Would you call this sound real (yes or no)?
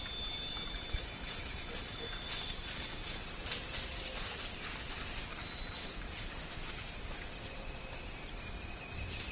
no